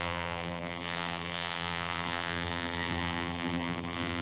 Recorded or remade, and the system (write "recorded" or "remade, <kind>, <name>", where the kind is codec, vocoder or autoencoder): remade, vocoder, BigVGAN v2